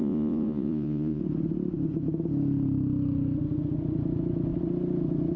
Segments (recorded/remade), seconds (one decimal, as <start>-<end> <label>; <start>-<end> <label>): 0.0-1.2 remade; 1.2-5.4 recorded